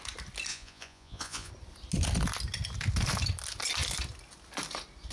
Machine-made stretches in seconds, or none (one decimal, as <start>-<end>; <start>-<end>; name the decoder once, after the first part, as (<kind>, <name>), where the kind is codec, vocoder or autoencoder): 0.5-1.5 (vocoder, Vocos)